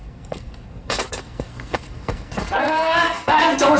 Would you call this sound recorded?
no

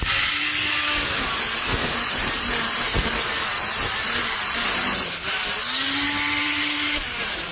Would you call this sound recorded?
yes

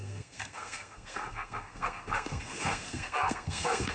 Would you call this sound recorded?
no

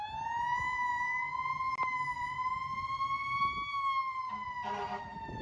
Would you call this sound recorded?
yes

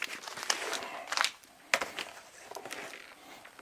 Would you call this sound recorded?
yes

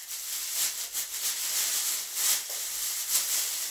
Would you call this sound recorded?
yes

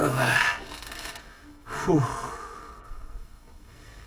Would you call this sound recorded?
no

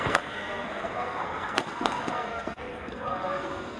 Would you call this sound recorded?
no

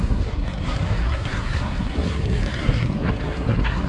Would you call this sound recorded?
no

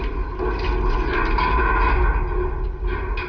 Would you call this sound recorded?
yes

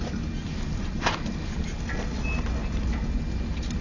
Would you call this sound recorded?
yes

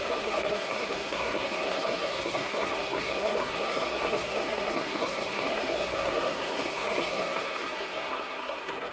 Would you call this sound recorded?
no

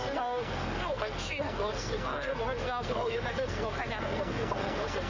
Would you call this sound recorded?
no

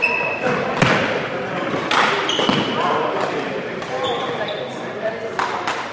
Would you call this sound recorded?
yes